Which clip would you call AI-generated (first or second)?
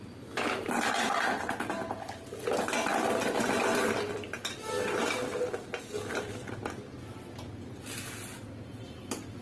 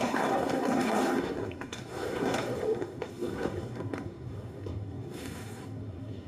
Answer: second